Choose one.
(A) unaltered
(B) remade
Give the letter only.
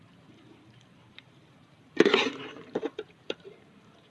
B